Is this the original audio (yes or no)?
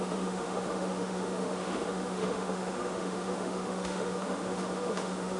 no